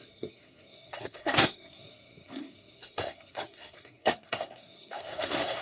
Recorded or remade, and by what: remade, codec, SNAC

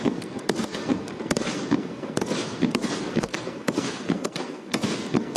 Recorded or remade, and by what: remade, codec, SNAC